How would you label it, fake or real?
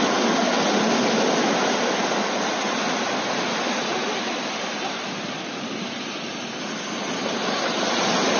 real